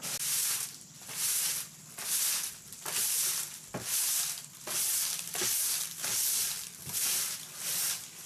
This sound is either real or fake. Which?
real